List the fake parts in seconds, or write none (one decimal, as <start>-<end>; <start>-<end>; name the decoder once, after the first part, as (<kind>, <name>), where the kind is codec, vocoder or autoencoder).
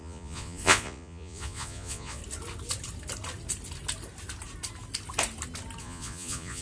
0.0-2.2 (vocoder, Vocos); 5.8-6.6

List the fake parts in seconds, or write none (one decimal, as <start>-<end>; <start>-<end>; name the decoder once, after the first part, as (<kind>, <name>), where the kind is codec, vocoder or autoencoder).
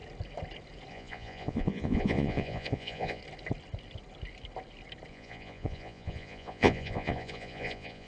0.9-3.2 (vocoder, Vocos); 5.1-8.1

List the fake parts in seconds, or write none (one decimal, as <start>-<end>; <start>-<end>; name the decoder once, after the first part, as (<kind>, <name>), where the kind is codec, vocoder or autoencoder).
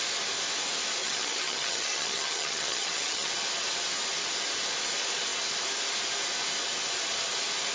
1.0-3.3 (vocoder, HiFi-GAN)